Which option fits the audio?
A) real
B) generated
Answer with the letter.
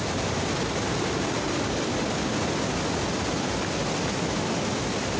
A